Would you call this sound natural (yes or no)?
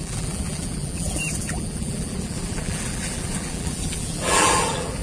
no